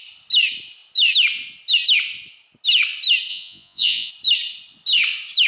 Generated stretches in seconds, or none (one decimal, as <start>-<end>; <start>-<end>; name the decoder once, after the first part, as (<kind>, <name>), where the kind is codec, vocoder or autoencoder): 3.3-4.1 (vocoder, Vocos)

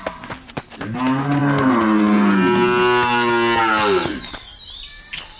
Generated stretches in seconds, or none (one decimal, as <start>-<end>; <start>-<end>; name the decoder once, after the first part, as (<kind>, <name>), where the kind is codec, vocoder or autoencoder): none